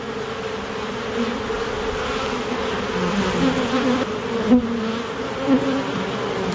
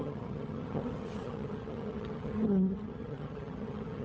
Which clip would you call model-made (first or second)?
second